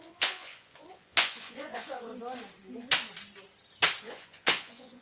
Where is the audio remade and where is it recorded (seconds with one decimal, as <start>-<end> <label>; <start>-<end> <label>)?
0.0-2.1 remade; 2.1-4.0 recorded; 4.0-5.0 remade